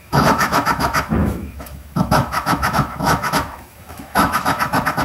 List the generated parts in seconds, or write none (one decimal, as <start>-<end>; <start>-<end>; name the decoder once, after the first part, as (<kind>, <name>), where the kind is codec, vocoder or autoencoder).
0.0-5.0 (autoencoder, DAC-VAE)